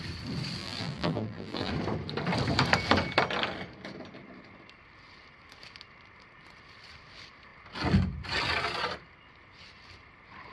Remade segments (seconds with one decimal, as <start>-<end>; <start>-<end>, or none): 0.6-1.7